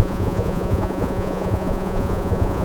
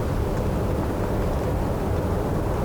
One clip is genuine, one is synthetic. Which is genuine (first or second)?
second